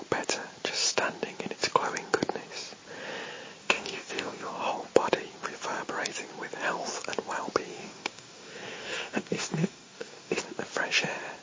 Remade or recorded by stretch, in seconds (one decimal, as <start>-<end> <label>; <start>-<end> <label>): 0.0-3.6 recorded; 3.6-4.5 remade; 4.5-7.7 recorded; 7.7-10.4 remade; 10.4-11.4 recorded